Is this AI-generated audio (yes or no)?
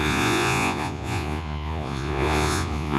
yes